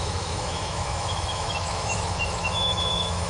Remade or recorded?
remade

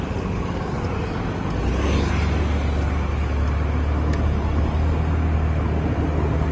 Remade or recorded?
recorded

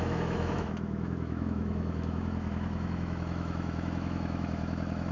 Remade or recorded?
remade